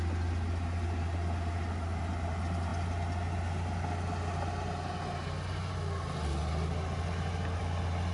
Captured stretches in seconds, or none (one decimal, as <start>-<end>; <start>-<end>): 0.0-8.1